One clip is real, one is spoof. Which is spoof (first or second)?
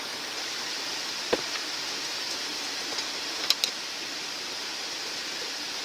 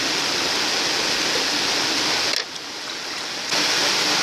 first